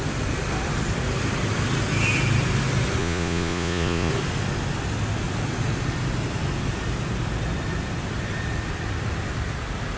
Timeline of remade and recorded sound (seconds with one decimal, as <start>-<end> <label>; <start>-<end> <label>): 0.0-3.0 recorded; 3.0-4.1 remade; 4.1-10.0 recorded